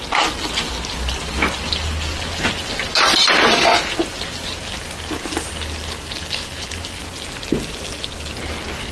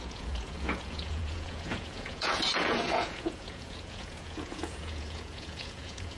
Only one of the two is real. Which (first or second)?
first